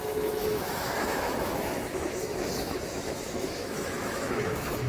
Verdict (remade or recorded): remade